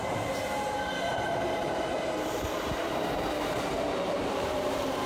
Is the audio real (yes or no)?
no